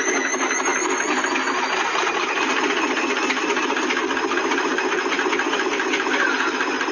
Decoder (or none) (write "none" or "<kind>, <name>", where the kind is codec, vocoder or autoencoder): none